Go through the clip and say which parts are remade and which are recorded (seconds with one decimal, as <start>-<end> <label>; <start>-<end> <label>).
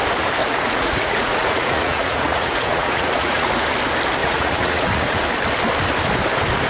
0.0-0.4 recorded; 0.4-3.5 remade; 3.5-4.2 recorded; 4.2-5.2 remade; 5.2-6.7 recorded